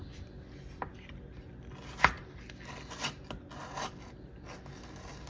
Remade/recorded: recorded